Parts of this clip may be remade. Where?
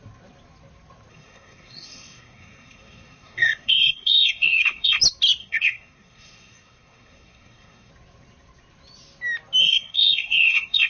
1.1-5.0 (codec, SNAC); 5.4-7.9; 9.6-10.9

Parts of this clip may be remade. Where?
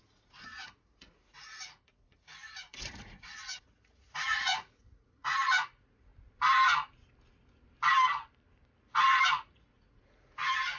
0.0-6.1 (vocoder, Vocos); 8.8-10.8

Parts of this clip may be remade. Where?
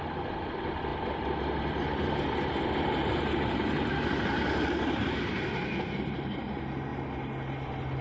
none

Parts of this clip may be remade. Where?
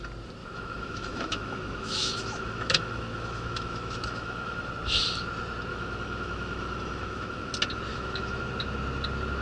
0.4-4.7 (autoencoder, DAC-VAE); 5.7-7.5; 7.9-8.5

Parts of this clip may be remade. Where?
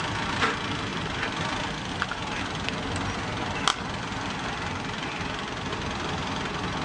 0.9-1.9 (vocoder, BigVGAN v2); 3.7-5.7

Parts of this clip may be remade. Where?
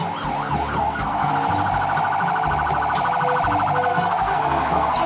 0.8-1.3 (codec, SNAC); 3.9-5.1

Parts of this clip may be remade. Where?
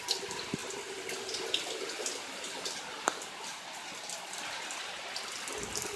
none